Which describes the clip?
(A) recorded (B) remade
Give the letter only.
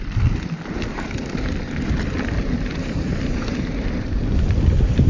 B